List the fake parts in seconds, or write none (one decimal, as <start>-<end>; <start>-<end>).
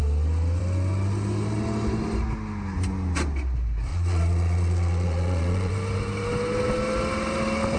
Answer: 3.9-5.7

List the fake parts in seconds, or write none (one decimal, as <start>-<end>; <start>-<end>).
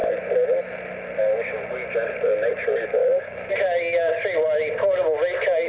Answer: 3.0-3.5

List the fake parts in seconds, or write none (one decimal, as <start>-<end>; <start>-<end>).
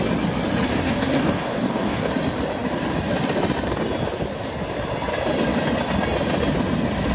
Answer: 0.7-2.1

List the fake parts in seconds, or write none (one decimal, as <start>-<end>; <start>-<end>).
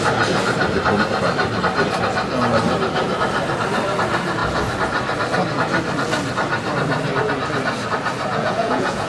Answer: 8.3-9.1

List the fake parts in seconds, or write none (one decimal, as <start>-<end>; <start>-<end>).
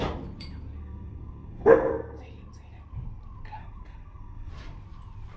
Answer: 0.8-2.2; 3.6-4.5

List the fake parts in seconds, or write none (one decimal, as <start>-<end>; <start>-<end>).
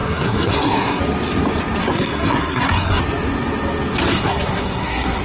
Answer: 0.0-1.0; 1.8-3.0; 4.1-5.2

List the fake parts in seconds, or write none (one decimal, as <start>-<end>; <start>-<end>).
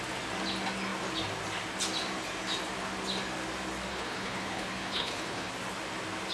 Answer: 3.9-5.5